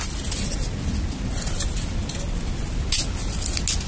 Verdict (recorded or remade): recorded